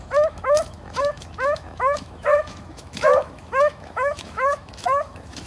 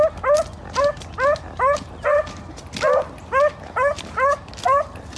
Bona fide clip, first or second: second